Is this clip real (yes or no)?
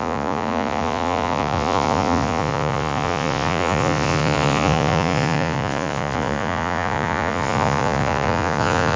no